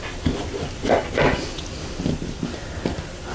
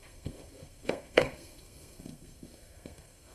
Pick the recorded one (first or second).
first